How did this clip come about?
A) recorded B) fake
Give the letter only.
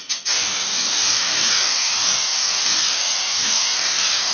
B